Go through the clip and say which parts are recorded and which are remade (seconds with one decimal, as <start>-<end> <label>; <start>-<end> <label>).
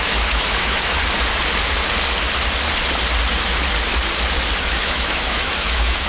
0.0-1.0 remade; 1.0-4.6 recorded; 4.6-6.1 remade